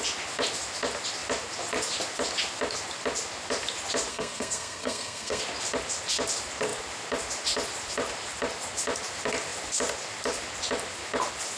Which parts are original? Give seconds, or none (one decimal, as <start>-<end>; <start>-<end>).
0.0-4.1; 5.4-11.6

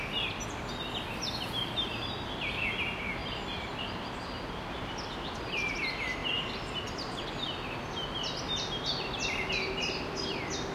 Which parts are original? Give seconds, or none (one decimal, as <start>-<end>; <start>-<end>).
0.0-10.7

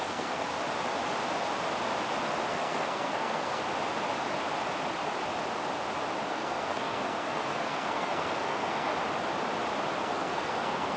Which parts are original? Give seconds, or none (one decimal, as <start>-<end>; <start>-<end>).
0.5-2.5; 3.6-6.3; 8.9-10.0

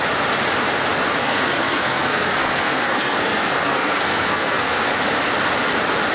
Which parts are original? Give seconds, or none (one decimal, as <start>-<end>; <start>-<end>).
0.0-1.2; 4.9-6.1

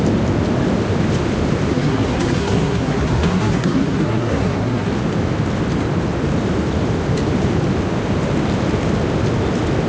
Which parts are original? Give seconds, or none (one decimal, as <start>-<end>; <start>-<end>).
0.0-1.7; 4.9-9.9

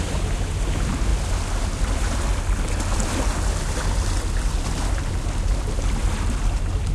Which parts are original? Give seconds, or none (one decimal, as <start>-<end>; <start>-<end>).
0.0-6.9

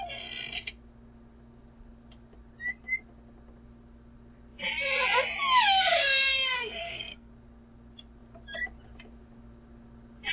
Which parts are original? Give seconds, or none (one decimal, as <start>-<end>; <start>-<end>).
0.0-6.0; 7.3-10.3

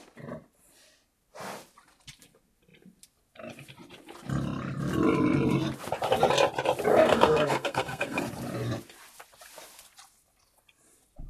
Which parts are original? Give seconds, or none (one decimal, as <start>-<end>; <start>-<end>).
0.0-6.9; 8.2-11.3